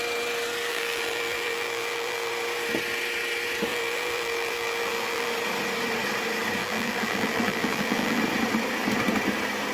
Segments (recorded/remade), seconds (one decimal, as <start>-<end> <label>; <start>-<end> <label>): 0.0-0.7 recorded; 0.7-2.3 remade; 2.3-3.7 recorded; 3.7-5.3 remade; 5.3-6.6 recorded; 6.6-8.2 remade; 8.2-9.7 recorded